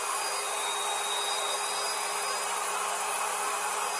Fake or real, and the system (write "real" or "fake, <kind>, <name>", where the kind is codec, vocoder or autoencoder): real